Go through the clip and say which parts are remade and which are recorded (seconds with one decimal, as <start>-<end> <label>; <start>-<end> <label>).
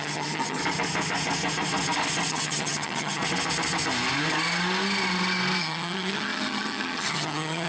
0.0-0.6 remade; 0.6-2.3 recorded; 2.3-3.2 remade; 3.2-5.6 recorded; 5.6-7.7 remade